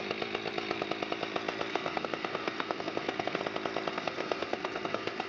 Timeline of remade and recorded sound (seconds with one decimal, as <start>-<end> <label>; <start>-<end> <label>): 0.0-1.7 recorded; 1.7-3.4 remade; 3.4-3.9 recorded; 3.9-5.3 remade